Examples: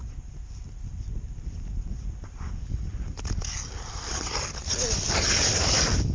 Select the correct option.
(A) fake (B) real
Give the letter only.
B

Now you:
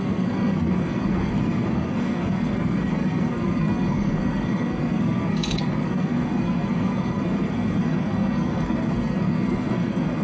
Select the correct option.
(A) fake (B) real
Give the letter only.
A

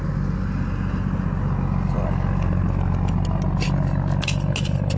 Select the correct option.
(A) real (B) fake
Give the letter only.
A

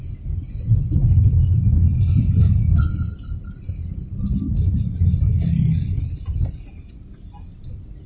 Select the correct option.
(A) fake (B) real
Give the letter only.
B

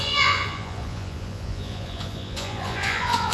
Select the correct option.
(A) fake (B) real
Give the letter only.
A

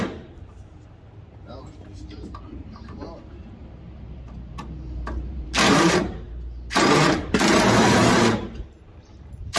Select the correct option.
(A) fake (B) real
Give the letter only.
A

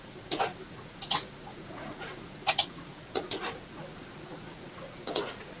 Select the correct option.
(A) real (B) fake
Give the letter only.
B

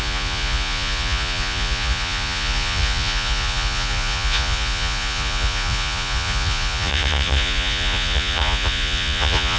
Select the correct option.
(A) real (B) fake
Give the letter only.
B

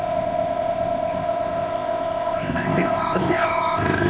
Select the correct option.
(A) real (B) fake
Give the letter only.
B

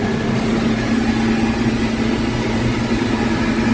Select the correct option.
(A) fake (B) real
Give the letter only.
B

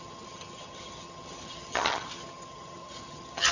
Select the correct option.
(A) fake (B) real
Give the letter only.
A